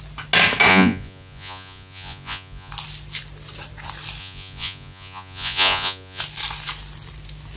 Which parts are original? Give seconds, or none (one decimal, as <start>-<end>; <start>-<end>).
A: 0.0-0.7; 2.7-4.2; 6.2-7.6